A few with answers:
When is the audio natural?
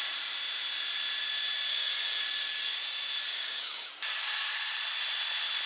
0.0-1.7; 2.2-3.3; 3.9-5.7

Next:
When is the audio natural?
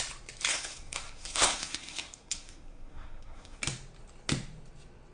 0.0-0.5; 3.6-5.1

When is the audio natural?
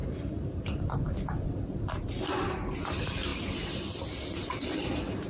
none